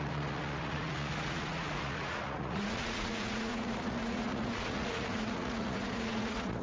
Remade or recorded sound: remade